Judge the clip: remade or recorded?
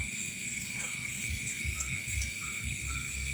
remade